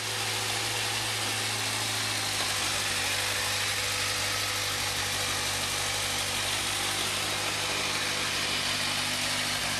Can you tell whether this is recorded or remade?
recorded